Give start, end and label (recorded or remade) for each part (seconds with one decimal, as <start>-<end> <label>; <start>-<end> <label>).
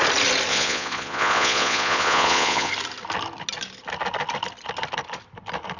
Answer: 0.0-0.5 recorded; 0.5-2.7 remade; 2.7-5.8 recorded